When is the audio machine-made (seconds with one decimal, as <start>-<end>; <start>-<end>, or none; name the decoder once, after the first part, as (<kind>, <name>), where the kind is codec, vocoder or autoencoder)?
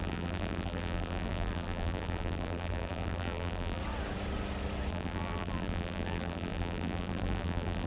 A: 0.0-3.8 (vocoder, BigVGAN v2); 4.9-7.9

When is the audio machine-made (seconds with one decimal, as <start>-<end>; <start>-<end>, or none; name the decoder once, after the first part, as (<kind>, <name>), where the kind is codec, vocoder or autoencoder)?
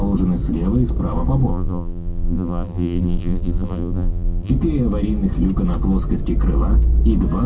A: 1.5-4.5 (vocoder, BigVGAN v2)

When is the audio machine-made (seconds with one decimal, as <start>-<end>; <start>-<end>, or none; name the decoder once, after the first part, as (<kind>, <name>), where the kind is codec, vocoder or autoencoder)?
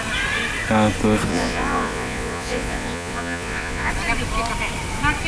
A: 1.3-3.9 (vocoder, Vocos)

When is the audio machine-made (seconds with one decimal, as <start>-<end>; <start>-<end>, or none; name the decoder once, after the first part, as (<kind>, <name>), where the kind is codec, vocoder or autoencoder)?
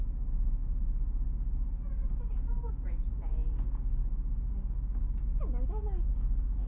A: none